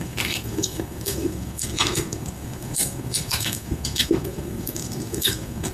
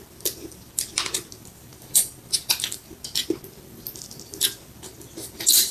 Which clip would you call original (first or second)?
second